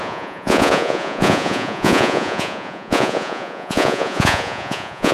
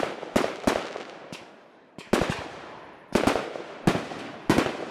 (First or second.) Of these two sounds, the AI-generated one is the first